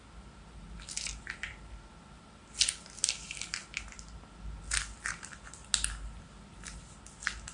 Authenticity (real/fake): real